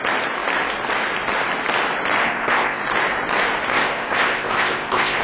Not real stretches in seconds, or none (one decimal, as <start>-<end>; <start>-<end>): 2.2-2.8; 3.7-5.2